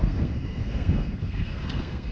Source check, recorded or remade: remade